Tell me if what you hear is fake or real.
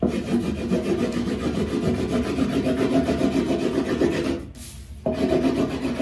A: real